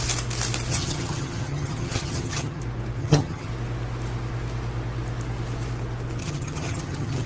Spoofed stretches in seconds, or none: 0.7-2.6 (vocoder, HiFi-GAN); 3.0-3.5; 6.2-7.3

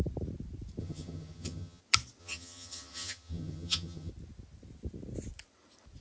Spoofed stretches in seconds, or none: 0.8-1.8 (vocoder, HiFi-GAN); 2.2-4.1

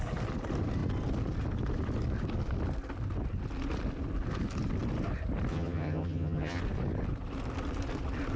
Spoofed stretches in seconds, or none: 5.5-6.6 (vocoder, HiFi-GAN)